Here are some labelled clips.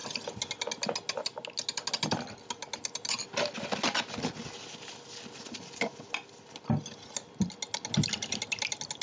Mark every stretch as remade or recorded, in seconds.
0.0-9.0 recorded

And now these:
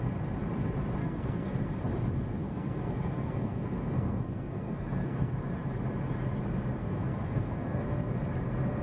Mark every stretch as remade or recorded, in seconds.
0.0-1.0 recorded; 1.0-1.7 remade; 1.7-2.4 recorded; 2.4-5.4 remade; 5.4-6.8 recorded; 6.8-7.8 remade; 7.8-8.8 recorded

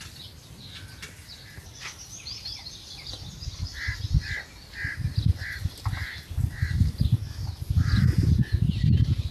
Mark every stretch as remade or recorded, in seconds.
0.0-9.3 recorded